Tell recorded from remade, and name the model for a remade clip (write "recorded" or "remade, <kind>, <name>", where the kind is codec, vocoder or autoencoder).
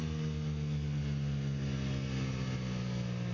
recorded